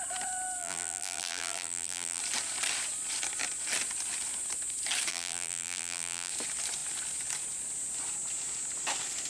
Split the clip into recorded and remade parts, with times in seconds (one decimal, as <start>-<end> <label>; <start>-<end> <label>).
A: 0.0-0.6 recorded; 0.6-2.2 remade; 2.2-5.1 recorded; 5.1-6.3 remade; 6.3-9.3 recorded

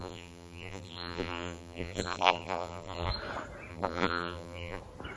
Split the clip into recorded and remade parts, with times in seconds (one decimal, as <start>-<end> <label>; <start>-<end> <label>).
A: 0.0-3.1 remade; 3.1-3.7 recorded; 3.7-4.8 remade; 4.8-5.2 recorded

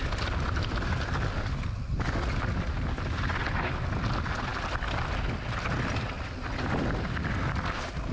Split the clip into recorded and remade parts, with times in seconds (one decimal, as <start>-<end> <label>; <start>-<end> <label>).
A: 0.0-8.1 recorded

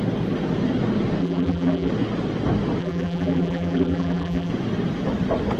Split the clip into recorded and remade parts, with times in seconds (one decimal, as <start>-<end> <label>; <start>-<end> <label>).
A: 0.0-1.2 recorded; 1.2-1.9 remade; 1.9-2.8 recorded; 2.8-4.5 remade; 4.5-5.6 recorded

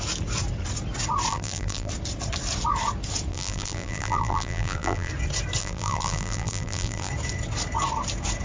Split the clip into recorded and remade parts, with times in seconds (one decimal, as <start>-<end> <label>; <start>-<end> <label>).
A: 0.0-1.3 recorded; 1.3-1.9 remade; 1.9-3.3 recorded; 3.3-5.1 remade; 5.1-5.6 recorded; 5.6-7.1 remade; 7.1-8.4 recorded

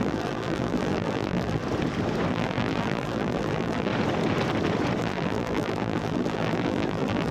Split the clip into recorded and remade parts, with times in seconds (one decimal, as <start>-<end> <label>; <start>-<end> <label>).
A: 0.0-1.6 remade; 1.6-2.3 recorded; 2.3-3.9 remade; 3.9-5.0 recorded; 5.0-7.3 remade

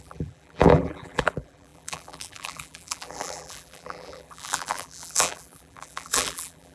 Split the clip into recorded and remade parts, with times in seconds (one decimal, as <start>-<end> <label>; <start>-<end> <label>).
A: 0.0-6.7 remade